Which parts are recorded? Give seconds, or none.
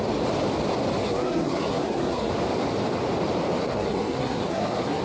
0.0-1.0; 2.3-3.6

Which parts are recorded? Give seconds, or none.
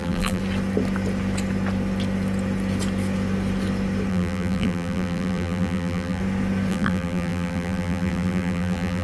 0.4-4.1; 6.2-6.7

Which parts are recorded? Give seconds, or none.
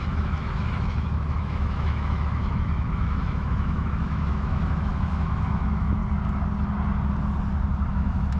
6.0-7.9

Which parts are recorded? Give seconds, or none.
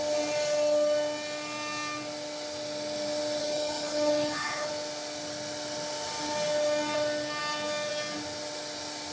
0.0-3.4; 4.7-9.1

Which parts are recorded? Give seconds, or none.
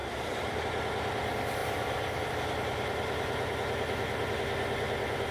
0.6-1.6; 2.3-5.3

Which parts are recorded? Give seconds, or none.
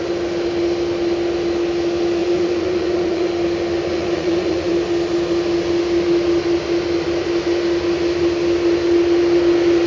0.0-2.2; 3.3-3.9; 4.7-9.9